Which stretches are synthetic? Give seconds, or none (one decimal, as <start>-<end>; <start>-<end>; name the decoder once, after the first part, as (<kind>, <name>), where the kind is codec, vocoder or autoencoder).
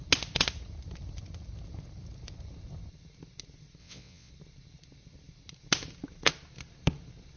3.8-4.3 (vocoder, WaveNeXt)